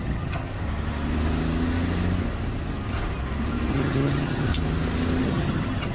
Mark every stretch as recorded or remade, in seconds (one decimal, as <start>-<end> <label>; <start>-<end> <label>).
0.0-0.5 remade; 0.5-3.7 recorded; 3.7-4.5 remade; 4.5-5.2 recorded; 5.2-5.9 remade